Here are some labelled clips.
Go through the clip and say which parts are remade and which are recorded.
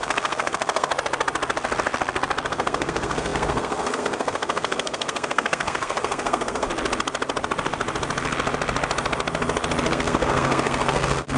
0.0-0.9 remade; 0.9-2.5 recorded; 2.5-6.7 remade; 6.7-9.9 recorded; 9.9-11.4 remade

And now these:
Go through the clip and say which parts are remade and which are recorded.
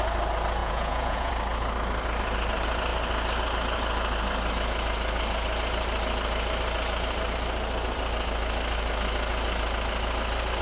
0.0-0.6 recorded; 0.6-1.3 remade; 1.3-10.6 recorded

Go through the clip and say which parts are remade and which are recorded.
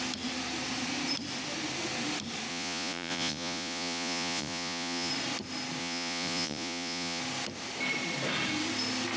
0.0-2.5 recorded; 2.5-5.1 remade; 5.1-5.8 recorded; 5.8-7.2 remade; 7.2-9.2 recorded